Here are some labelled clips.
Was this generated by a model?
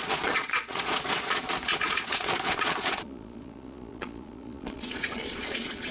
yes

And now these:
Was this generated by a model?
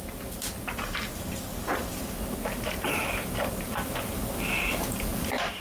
yes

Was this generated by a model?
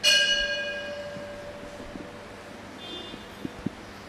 no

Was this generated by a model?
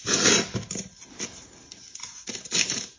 no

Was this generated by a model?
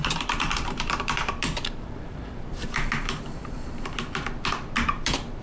yes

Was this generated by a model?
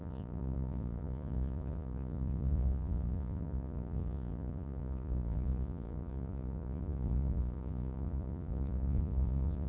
yes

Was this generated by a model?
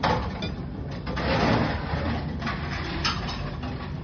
no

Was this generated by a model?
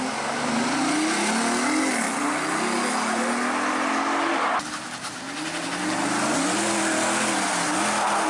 no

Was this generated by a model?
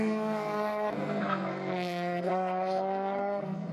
yes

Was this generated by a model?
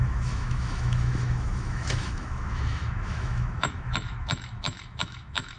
yes